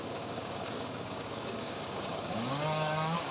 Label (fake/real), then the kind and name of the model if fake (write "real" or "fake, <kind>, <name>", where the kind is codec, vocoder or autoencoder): fake, codec, DAC